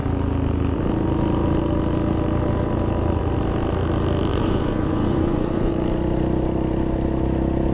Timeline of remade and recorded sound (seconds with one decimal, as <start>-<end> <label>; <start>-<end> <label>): 0.0-4.3 recorded; 4.3-5.7 remade; 5.7-7.7 recorded